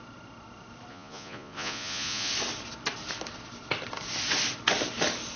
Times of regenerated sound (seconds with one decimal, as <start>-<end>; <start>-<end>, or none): 0.9-2.3